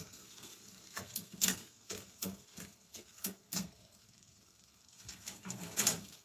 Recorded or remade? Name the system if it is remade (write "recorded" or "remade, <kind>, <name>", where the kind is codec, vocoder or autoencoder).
remade, codec, SNAC